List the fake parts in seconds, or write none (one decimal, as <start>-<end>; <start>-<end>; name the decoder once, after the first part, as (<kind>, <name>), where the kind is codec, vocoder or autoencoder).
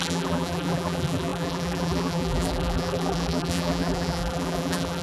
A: 0.0-5.0 (vocoder, BigVGAN v2)